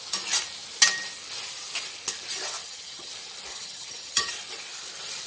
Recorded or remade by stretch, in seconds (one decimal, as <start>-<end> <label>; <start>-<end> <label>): 0.0-2.6 recorded; 2.6-3.1 remade; 3.1-3.5 recorded; 3.5-4.3 remade; 4.3-5.3 recorded